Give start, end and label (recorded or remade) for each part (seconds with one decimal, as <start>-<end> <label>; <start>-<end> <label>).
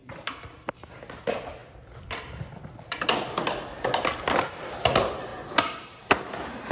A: 0.0-0.7 remade; 0.7-1.6 recorded; 1.6-4.0 remade; 4.0-6.7 recorded